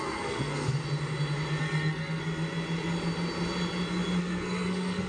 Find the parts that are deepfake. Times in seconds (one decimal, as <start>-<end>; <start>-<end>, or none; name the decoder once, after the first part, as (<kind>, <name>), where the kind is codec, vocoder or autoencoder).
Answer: 0.0-0.8 (codec, SNAC); 1.6-2.2; 4.2-5.1

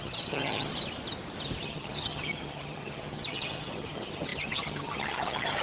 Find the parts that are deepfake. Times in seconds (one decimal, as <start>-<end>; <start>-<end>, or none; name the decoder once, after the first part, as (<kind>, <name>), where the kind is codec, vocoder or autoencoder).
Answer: 0.0-0.7 (vocoder, HiFi-GAN); 1.6-5.6

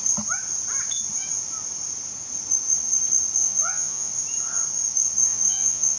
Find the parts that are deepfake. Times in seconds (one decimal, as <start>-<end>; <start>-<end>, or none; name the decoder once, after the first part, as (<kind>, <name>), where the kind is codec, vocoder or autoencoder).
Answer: 3.4-4.1 (vocoder, Vocos); 5.2-6.0

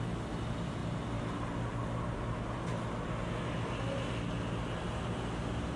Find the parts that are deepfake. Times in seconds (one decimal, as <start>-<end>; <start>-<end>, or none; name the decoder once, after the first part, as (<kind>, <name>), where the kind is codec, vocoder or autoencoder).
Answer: none